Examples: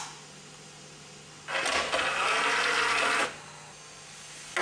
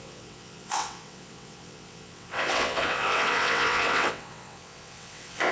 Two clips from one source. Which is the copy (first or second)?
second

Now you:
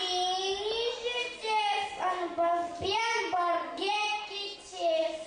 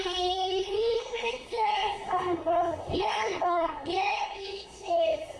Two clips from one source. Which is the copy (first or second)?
second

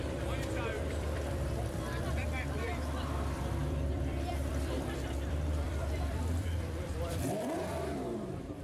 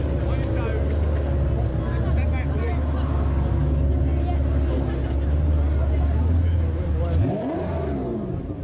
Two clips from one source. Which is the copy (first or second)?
first